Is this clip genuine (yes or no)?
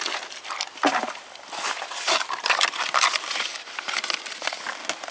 yes